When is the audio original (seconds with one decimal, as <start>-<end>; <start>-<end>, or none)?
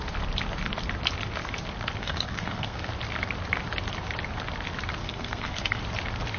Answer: 0.0-2.0; 2.9-5.0; 5.8-6.4